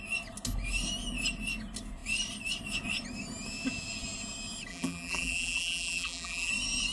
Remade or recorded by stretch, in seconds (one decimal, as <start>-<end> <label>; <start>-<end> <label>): 0.0-4.7 recorded; 4.7-6.5 remade; 6.5-6.9 recorded

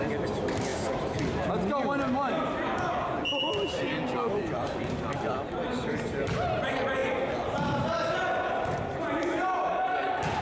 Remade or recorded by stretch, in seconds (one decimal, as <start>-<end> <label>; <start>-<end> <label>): 0.0-0.7 remade; 0.7-4.4 recorded; 4.4-7.0 remade; 7.0-8.9 recorded; 8.9-10.4 remade

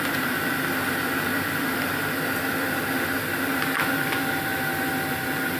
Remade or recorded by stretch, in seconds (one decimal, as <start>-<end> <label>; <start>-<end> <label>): 0.0-5.6 recorded

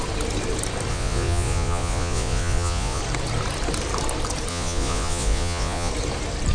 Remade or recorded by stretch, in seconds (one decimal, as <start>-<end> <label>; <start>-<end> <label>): 0.0-0.9 recorded; 0.9-3.0 remade; 3.0-4.5 recorded; 4.5-5.9 remade; 5.9-6.5 recorded